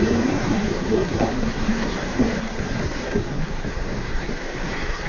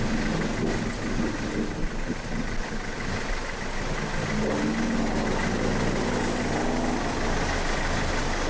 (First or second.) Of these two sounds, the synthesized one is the first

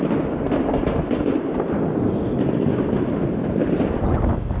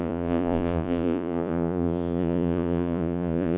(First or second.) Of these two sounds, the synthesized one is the second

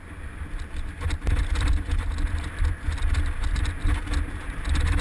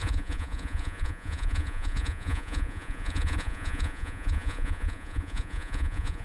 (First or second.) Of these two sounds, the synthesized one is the second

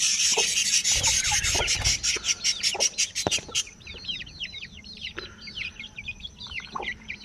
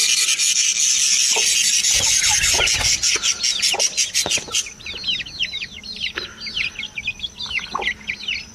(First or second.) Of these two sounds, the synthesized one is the first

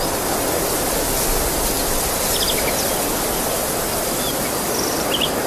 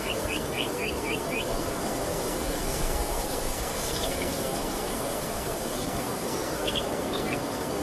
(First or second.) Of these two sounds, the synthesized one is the second